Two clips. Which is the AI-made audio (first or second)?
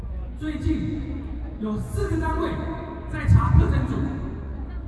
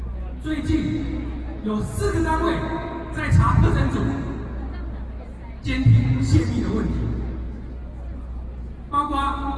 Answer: first